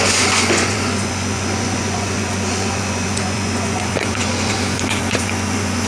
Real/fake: fake